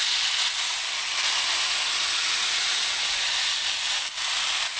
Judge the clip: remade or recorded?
recorded